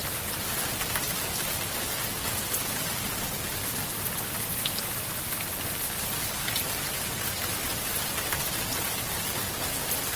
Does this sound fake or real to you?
real